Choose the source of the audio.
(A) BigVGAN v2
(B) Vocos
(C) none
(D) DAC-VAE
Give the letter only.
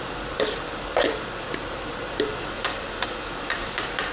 A